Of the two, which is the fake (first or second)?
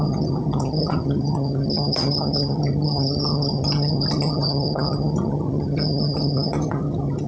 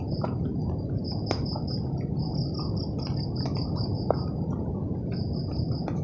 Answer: first